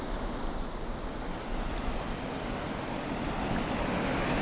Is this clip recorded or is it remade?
recorded